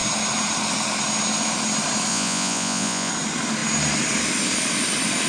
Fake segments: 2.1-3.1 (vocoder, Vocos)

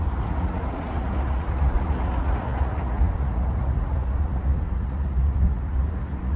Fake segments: 0.0-6.4 (vocoder, Vocos)